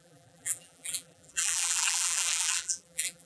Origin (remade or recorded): remade